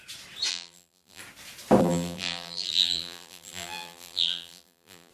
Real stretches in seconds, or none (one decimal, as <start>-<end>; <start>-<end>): 0.0-0.5; 1.2-1.8